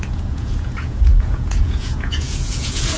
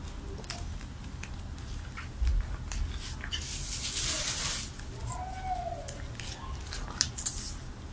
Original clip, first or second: second